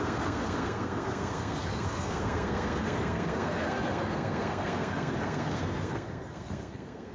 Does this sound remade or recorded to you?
remade